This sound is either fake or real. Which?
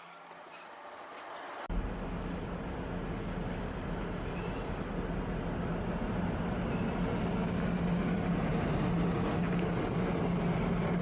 real